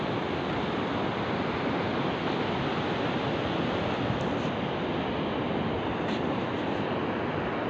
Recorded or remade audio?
recorded